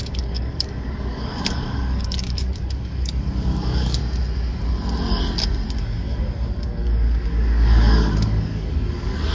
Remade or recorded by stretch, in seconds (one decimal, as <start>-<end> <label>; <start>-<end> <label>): 0.0-4.0 remade; 4.0-5.8 recorded; 5.8-9.3 remade